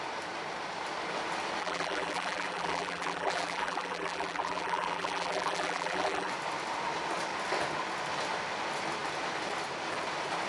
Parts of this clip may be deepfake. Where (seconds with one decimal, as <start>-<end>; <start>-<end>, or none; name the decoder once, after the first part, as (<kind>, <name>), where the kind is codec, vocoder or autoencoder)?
1.6-6.3 (vocoder, BigVGAN v2)